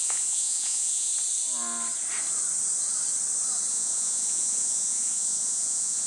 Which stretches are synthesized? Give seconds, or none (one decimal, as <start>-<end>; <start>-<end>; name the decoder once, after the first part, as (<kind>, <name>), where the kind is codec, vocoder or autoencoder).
0.0-1.1 (vocoder, Vocos); 3.7-6.1